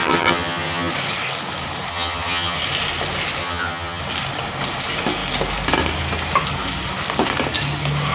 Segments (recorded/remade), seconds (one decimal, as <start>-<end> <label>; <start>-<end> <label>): 0.0-0.9 remade; 0.9-1.9 recorded; 1.9-2.6 remade; 2.6-3.4 recorded; 3.4-4.0 remade; 4.0-8.1 recorded